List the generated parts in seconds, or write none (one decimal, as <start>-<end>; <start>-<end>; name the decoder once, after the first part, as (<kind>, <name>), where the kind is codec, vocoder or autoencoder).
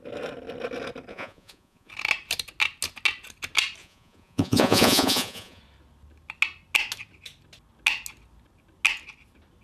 1.1-1.9 (vocoder, Vocos); 3.8-5.6